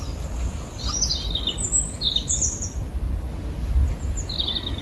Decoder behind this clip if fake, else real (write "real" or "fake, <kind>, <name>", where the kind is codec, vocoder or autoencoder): real